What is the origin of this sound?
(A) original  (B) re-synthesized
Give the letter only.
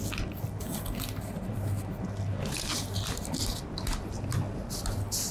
A